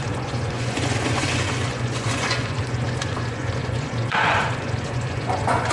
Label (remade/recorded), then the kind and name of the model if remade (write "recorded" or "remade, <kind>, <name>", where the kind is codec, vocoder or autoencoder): remade, vocoder, Vocos